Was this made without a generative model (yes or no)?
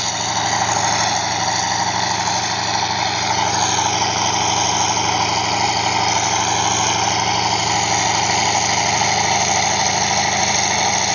yes